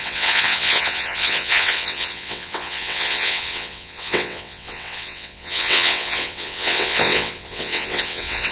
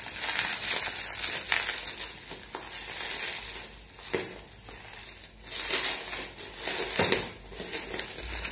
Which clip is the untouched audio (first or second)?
second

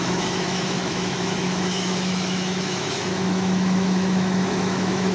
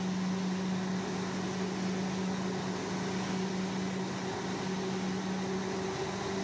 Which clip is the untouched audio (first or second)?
second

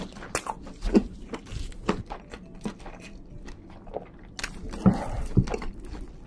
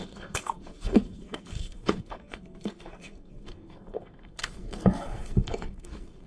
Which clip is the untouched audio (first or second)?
first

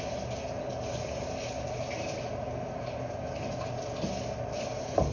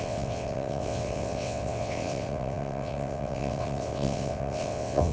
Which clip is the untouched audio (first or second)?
first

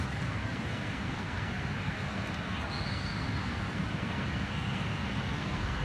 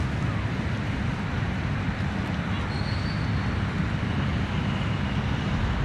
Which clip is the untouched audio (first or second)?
second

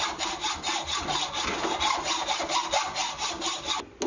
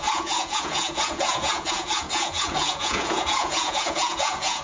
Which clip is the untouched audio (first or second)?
first